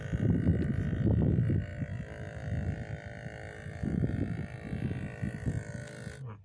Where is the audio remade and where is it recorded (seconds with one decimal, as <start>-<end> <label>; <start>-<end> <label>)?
0.0-6.4 recorded